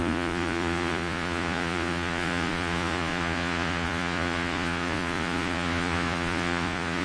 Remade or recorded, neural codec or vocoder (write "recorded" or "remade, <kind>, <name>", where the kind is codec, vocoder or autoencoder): remade, vocoder, Vocos